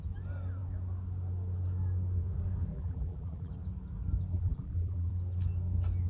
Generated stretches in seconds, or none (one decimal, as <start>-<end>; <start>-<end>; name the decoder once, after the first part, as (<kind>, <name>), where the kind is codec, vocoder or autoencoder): 2.7-3.5 (vocoder, BigVGAN v2); 4.3-5.1